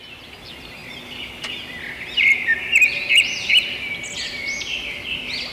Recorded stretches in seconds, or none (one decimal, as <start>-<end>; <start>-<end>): 0.0-0.8; 1.5-5.5